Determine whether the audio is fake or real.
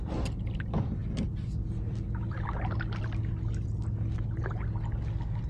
real